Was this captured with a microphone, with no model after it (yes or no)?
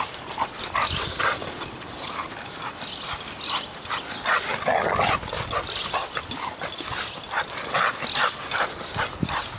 yes